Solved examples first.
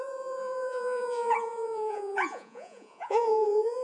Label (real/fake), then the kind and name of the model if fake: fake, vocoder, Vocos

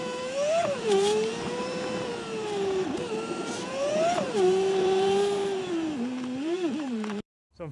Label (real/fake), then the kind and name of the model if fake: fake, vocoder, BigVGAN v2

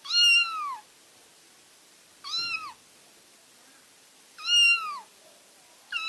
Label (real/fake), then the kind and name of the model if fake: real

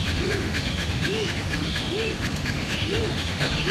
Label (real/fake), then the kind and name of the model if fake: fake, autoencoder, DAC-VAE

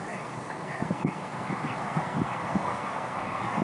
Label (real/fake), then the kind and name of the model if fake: fake, codec, SNAC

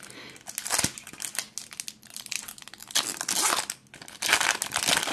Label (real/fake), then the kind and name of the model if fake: real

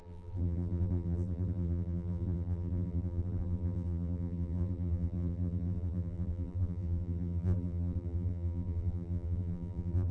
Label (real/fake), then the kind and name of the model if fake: fake, vocoder, BigVGAN v2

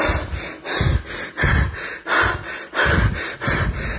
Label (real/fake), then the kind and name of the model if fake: real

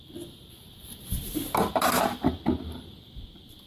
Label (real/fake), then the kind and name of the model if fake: real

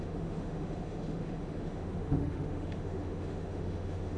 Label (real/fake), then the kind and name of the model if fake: fake, autoencoder, DAC-VAE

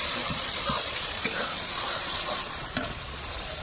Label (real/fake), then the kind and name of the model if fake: fake, vocoder, Vocos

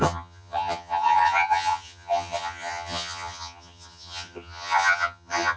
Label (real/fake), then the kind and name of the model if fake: fake, vocoder, HiFi-GAN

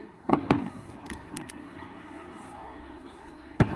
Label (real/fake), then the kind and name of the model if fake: fake, codec, SNAC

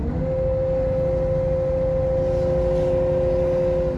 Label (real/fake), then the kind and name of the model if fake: real